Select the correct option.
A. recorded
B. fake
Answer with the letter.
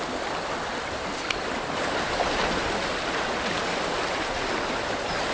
A